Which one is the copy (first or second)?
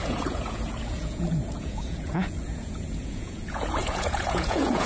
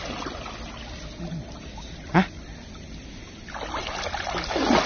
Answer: first